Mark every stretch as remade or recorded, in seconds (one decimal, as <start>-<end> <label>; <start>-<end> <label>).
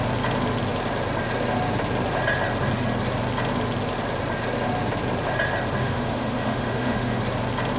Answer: 0.0-5.8 recorded; 5.8-7.2 remade; 7.2-7.8 recorded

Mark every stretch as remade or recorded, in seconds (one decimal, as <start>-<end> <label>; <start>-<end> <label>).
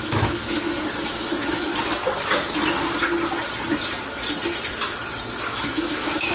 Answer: 0.0-0.4 remade; 0.4-1.0 recorded; 1.0-1.7 remade; 1.7-5.5 recorded; 5.5-6.3 remade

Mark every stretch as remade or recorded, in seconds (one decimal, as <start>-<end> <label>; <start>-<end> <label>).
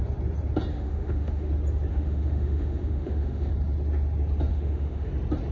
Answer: 0.0-0.7 recorded; 0.7-1.5 remade; 1.5-1.9 recorded; 1.9-3.5 remade; 3.5-4.5 recorded; 4.5-5.1 remade; 5.1-5.5 recorded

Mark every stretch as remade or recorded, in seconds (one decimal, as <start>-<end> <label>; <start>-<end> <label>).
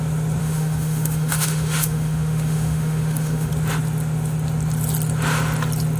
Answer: 0.0-0.4 recorded; 0.4-3.5 remade; 3.5-6.0 recorded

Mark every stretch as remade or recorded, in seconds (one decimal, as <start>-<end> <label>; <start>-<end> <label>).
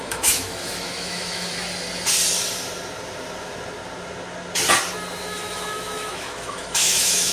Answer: 0.0-1.5 remade; 1.5-5.2 recorded; 5.2-7.3 remade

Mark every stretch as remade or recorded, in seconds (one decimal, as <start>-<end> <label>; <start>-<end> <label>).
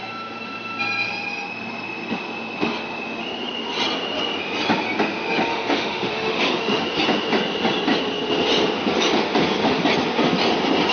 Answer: 0.0-5.5 recorded; 5.5-6.8 remade; 6.8-10.9 recorded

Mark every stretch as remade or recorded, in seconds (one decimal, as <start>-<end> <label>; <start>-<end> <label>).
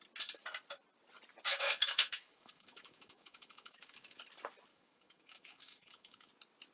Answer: 0.0-1.5 recorded; 1.5-4.2 remade; 4.2-4.7 recorded; 4.7-6.3 remade; 6.3-6.7 recorded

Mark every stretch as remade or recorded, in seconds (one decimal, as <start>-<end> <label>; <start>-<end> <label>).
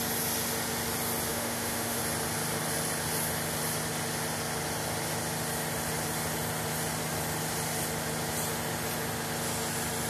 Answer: 0.0-1.3 recorded; 1.3-2.0 remade; 2.0-10.1 recorded